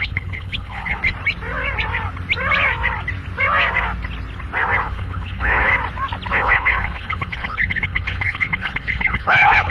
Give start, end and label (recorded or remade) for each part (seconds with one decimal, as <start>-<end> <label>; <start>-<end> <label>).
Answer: 0.0-1.0 remade; 1.0-4.8 recorded; 4.8-5.7 remade; 5.7-6.3 recorded; 6.3-9.7 remade